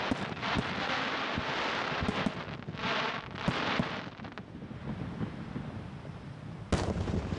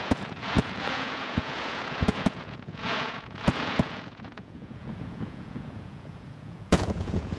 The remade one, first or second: second